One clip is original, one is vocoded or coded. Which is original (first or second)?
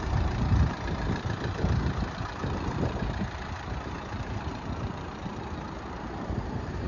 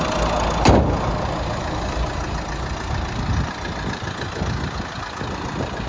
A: second